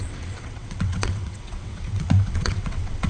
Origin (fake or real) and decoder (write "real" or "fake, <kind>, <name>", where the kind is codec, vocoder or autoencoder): fake, vocoder, WaveNeXt